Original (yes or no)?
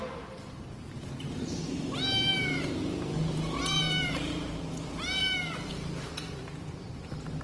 no